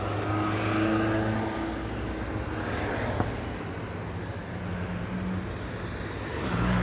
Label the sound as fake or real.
real